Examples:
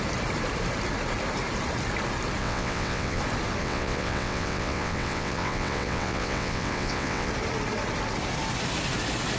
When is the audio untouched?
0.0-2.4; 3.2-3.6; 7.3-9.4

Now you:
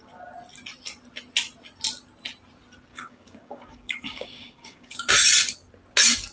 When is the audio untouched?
0.0-2.9; 5.1-6.3

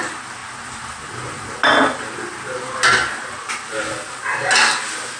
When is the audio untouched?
0.0-5.2

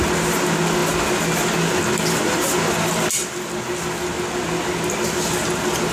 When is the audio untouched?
0.0-5.9

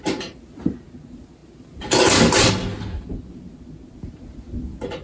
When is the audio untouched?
0.0-5.0

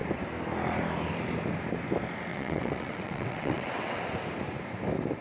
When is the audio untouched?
0.0-2.3; 4.0-5.2